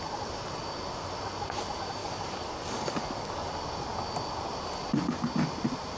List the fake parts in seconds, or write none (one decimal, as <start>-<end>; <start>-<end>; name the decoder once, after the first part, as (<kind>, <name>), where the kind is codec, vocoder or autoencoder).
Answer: 2.0-3.5 (codec, DAC)